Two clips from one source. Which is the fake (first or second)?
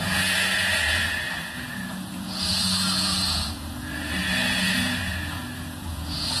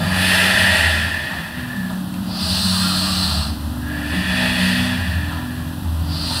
first